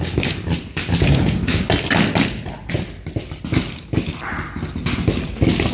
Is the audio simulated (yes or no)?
no